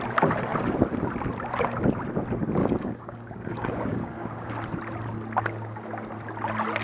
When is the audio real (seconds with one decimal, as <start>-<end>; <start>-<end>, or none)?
0.0-2.6; 4.5-6.8